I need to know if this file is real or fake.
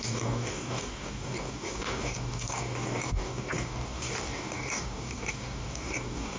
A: fake